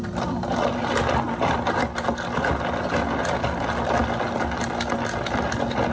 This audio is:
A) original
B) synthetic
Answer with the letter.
A